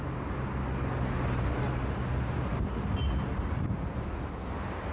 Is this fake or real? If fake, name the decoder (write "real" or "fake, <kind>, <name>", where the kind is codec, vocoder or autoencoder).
real